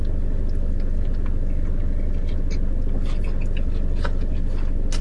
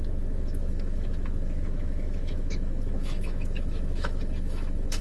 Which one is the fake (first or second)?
second